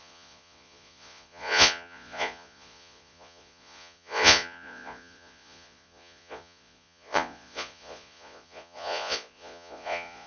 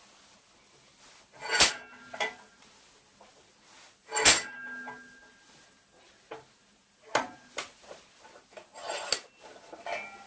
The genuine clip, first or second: second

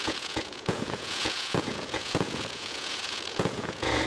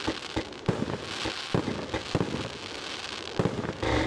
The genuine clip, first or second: second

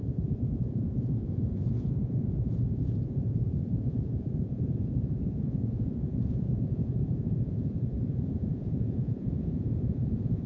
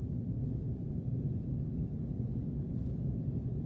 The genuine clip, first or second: second